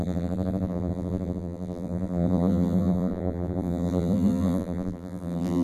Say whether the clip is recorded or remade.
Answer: remade